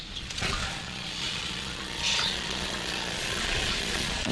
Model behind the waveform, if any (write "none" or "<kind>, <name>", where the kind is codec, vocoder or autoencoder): vocoder, Vocos